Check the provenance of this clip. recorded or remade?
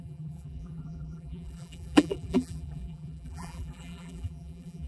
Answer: remade